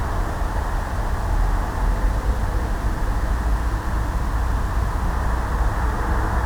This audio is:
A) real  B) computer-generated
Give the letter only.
A